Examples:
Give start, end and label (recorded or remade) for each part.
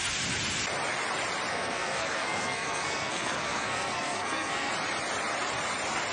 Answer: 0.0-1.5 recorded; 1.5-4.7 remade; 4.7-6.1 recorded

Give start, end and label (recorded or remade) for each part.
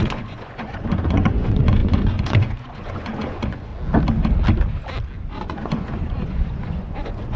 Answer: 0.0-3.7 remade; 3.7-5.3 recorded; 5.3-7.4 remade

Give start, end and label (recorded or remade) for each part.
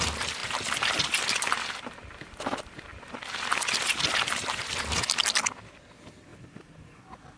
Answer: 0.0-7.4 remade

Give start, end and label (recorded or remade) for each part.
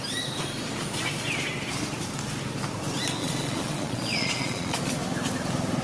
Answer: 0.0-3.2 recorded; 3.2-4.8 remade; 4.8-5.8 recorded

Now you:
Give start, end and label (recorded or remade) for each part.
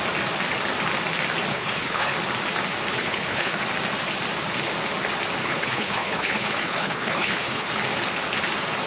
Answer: 0.0-1.5 recorded; 1.5-2.1 remade; 2.1-2.9 recorded; 2.9-3.6 remade; 3.6-5.4 recorded; 5.4-7.7 remade; 7.7-8.9 recorded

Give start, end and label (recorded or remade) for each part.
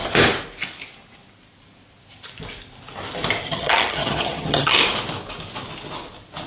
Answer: 0.0-3.4 recorded; 3.4-4.8 remade; 4.8-6.5 recorded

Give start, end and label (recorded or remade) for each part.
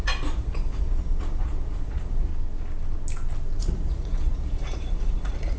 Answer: 0.0-2.3 remade; 2.3-3.6 recorded; 3.6-5.6 remade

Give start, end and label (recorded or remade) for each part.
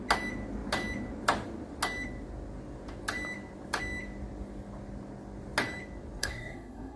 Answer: 0.0-6.2 recorded; 6.2-7.0 remade